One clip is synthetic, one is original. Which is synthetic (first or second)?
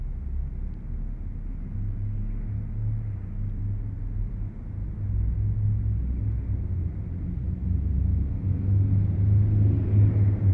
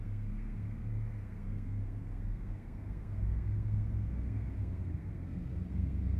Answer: second